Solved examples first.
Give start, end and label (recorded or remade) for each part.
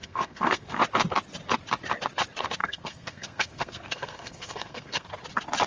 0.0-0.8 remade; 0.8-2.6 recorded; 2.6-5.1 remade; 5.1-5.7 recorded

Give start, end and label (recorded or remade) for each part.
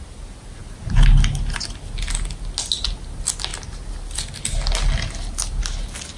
0.0-6.2 recorded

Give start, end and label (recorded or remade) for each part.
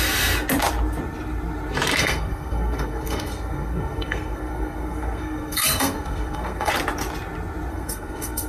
0.0-2.0 recorded; 2.0-6.7 remade; 6.7-7.7 recorded; 7.7-8.5 remade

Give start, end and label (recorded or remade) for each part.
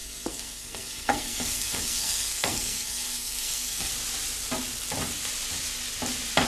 0.0-3.9 remade; 3.9-6.5 recorded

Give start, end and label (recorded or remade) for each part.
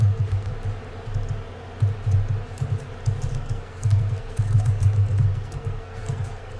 0.0-0.5 remade; 0.5-3.3 recorded; 3.3-6.6 remade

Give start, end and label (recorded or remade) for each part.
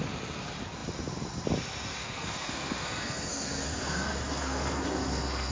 0.0-2.0 recorded; 2.0-5.5 remade